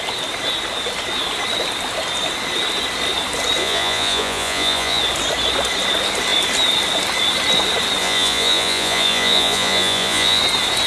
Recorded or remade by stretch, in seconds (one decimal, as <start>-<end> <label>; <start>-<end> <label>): 0.0-3.6 recorded; 3.6-5.0 remade; 5.0-8.0 recorded; 8.0-10.4 remade; 10.4-10.9 recorded